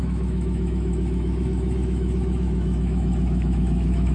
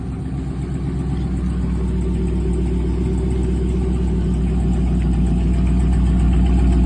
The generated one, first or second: first